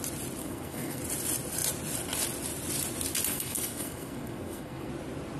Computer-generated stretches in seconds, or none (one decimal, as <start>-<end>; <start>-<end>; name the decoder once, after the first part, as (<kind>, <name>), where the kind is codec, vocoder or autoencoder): 0.4-1.0 (codec, SNAC); 3.3-4.9